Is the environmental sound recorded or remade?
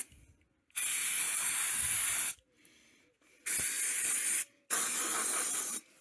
recorded